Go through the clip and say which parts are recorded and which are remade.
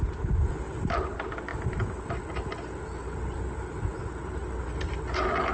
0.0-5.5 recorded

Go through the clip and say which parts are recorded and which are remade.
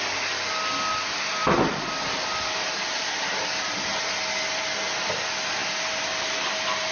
0.0-6.9 recorded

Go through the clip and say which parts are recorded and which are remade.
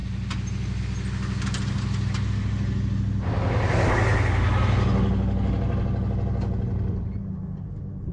0.0-8.1 recorded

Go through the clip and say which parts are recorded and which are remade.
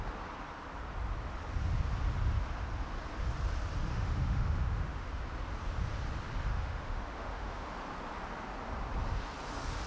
0.0-3.9 recorded; 3.9-5.1 remade; 5.1-6.5 recorded; 6.5-7.7 remade; 7.7-9.9 recorded